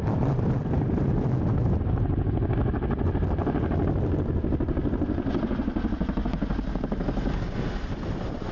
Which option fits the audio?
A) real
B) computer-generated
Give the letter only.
A